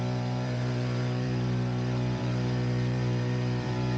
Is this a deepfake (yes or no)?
yes